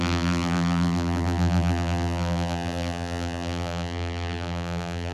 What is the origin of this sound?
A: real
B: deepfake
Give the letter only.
B